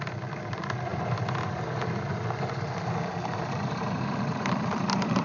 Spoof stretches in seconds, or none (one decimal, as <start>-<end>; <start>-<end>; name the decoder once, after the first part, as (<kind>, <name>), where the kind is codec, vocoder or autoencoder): 0.0-5.2 (vocoder, BigVGAN v2)